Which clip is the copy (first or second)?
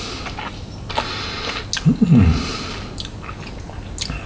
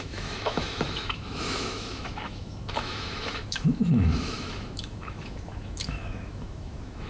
second